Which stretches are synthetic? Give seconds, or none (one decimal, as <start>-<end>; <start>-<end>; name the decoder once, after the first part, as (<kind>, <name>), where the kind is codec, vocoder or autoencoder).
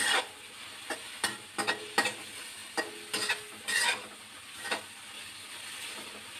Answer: none